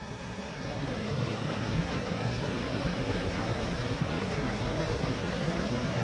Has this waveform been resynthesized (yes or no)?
yes